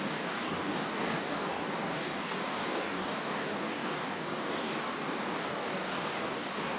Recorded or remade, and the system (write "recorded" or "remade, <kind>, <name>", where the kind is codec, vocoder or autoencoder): remade, codec, DAC